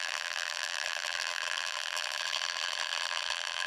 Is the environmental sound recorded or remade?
remade